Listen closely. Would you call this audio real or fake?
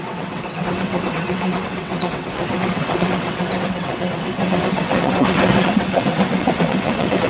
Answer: fake